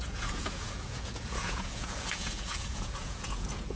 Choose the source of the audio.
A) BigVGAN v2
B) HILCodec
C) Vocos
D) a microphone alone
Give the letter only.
C